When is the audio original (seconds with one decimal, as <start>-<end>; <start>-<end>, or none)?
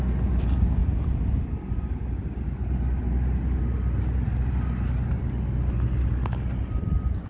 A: 0.0-7.3